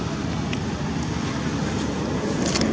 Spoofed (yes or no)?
no